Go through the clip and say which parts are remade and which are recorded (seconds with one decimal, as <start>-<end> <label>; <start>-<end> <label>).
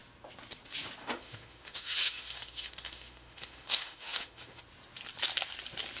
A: 0.0-1.0 recorded; 1.0-4.6 remade; 4.6-6.0 recorded